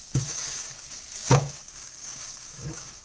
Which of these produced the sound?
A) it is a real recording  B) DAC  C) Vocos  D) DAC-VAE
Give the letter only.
B